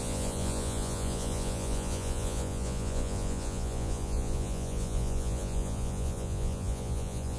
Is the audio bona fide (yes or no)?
no